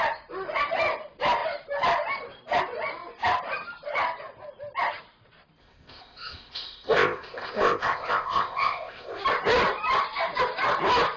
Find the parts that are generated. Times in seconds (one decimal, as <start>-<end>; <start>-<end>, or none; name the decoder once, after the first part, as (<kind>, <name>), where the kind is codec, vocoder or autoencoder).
5.6-9.2 (codec, ZipCodec)